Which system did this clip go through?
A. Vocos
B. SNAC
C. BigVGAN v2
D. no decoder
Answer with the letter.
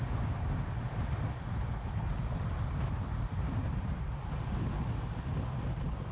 D